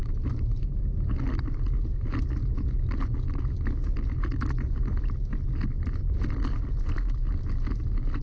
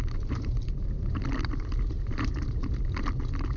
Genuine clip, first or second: first